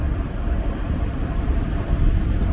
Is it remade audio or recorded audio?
remade